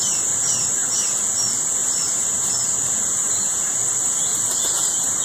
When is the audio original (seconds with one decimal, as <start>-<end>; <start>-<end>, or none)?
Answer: 0.0-1.8; 3.7-4.3